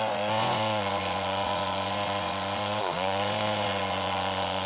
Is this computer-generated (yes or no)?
yes